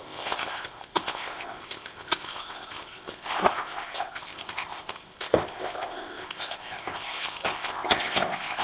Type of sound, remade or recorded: remade